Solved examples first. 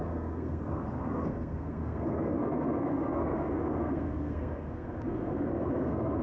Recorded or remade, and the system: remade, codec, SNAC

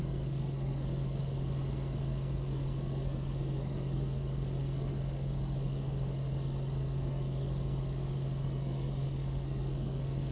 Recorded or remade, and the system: remade, codec, SNAC